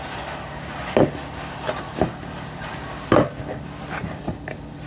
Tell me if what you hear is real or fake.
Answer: real